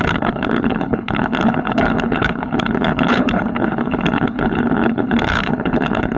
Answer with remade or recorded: remade